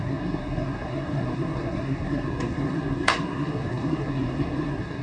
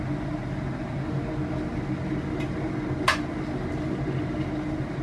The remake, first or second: first